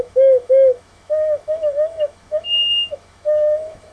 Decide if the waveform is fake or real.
fake